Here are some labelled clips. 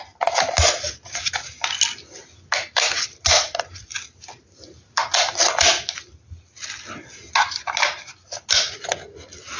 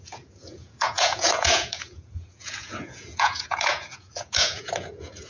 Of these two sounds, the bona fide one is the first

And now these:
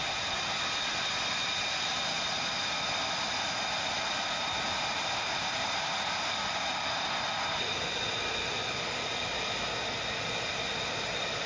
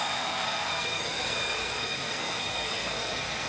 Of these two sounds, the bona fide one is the first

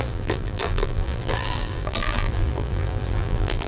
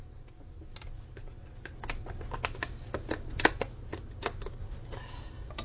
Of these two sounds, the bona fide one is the second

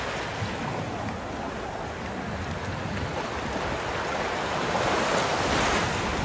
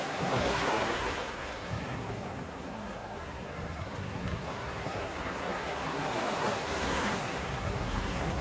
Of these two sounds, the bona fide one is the first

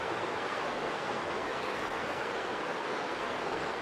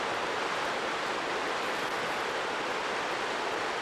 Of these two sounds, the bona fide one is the second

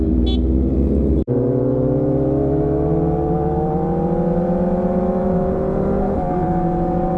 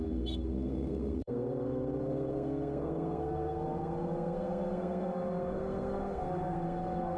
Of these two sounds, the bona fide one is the first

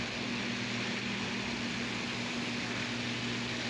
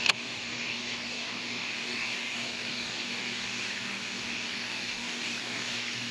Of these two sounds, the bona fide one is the first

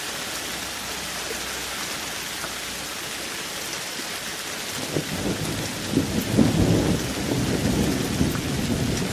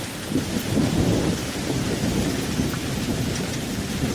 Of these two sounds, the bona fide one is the first